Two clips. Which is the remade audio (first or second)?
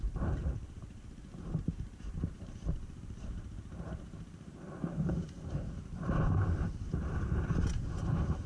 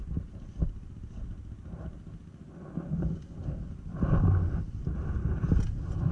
first